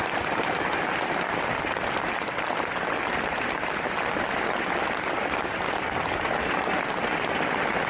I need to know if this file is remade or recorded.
recorded